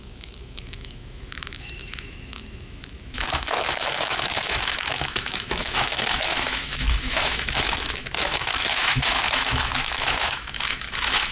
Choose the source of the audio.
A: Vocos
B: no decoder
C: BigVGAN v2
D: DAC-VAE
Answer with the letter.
D